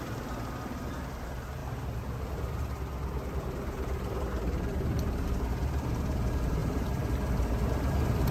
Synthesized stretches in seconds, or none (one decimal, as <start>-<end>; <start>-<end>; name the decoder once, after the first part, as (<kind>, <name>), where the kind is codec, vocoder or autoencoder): none